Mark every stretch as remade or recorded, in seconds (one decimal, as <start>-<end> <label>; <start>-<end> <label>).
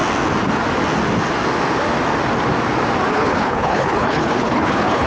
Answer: 0.0-3.1 recorded; 3.1-5.1 remade